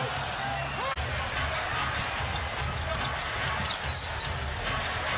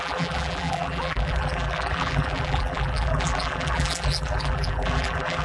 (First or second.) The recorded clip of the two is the first